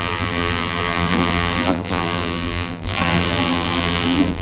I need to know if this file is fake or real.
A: fake